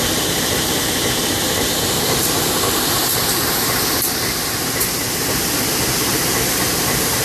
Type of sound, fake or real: fake